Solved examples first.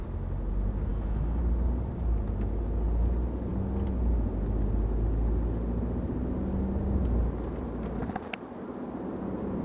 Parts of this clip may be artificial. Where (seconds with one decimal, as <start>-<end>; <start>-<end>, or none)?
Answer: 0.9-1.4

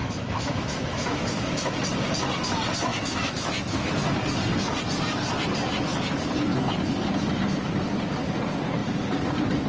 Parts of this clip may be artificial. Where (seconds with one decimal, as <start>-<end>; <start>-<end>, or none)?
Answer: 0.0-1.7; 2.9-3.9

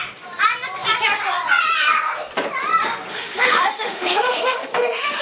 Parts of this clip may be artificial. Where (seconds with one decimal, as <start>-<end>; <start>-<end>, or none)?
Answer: 3.1-5.2

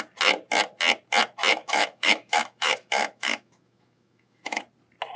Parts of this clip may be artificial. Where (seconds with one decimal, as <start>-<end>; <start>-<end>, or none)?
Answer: 1.5-4.6

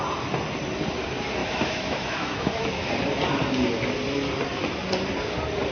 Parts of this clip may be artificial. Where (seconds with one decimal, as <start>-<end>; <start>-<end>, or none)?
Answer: 1.4-2.9

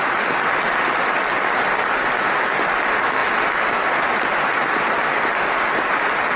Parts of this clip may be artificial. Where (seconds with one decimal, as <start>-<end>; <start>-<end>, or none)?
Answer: none